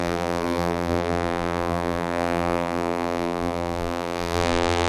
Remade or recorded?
remade